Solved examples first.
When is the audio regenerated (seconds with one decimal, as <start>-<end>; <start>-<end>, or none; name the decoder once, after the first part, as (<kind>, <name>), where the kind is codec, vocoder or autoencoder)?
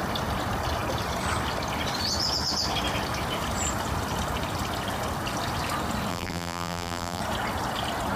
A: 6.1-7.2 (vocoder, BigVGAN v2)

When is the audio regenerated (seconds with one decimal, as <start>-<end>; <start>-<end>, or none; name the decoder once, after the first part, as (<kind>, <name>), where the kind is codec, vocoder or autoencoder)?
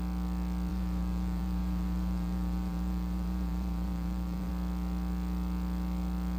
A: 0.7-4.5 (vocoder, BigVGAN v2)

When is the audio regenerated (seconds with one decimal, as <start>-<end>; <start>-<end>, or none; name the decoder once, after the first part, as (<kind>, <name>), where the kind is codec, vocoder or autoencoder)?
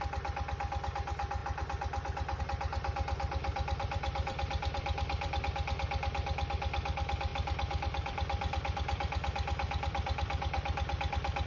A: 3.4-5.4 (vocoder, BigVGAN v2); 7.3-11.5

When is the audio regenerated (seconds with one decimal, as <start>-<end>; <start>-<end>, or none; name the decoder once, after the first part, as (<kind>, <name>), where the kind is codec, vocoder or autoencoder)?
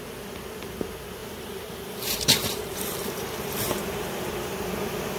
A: 1.2-4.3 (vocoder, BigVGAN v2)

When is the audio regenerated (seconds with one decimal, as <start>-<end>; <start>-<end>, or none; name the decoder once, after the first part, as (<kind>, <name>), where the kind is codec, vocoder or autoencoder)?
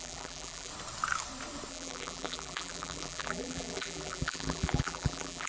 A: 0.0-0.7 (vocoder, BigVGAN v2); 1.7-5.5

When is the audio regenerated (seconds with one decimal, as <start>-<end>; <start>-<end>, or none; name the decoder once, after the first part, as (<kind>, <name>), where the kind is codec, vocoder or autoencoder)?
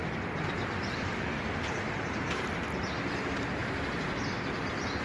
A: 0.0-3.0 (vocoder, BigVGAN v2); 3.6-4.3